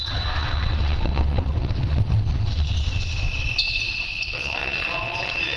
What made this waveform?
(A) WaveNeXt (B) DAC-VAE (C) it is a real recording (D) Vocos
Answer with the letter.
A